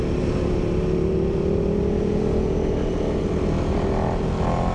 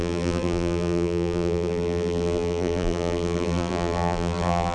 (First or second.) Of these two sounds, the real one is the first